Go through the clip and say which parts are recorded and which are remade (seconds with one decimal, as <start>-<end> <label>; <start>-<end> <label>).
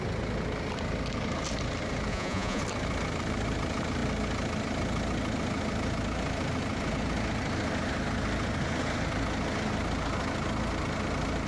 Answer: 0.0-2.1 recorded; 2.1-2.6 remade; 2.6-11.5 recorded